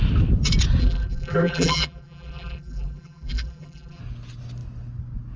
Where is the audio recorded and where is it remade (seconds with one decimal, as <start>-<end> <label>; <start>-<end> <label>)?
0.0-0.8 recorded; 0.8-4.0 remade; 4.0-5.4 recorded